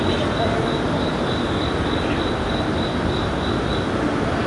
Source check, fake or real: real